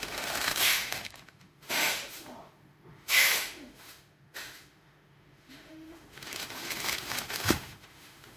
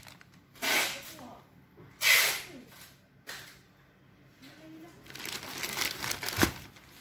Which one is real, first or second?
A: second